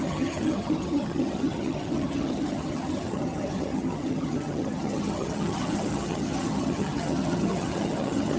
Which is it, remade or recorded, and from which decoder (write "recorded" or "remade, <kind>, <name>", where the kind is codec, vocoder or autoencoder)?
remade, vocoder, HiFi-GAN